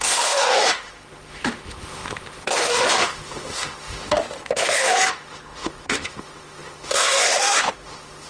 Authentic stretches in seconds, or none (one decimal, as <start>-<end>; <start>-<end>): none